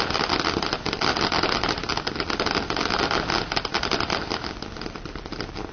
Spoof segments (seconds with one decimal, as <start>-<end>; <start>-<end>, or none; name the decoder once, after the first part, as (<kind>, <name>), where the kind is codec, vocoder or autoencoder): none